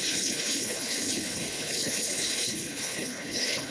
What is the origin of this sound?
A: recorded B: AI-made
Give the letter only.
B